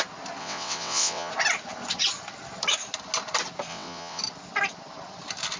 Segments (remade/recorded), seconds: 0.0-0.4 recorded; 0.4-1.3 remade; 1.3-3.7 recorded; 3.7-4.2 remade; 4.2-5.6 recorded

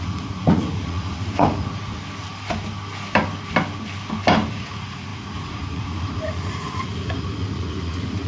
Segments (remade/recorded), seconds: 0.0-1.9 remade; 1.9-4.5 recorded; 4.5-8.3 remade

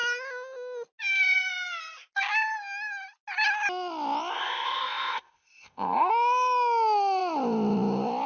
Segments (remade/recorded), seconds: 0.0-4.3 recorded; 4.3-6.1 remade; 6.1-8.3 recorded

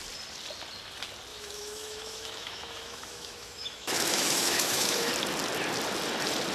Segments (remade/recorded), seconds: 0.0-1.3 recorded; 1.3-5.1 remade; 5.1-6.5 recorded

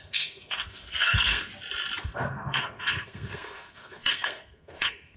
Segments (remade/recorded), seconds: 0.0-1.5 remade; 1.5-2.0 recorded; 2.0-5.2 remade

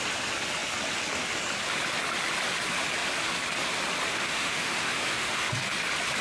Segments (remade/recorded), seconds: 0.0-4.1 recorded; 4.1-5.5 remade; 5.5-6.2 recorded

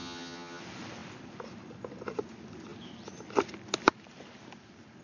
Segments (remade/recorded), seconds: 0.0-0.6 remade; 0.6-5.0 recorded